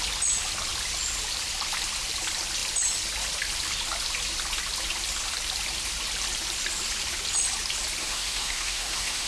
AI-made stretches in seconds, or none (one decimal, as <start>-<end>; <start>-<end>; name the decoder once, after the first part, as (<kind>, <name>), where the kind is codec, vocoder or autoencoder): 8.0-9.3 (autoencoder, DAC-VAE)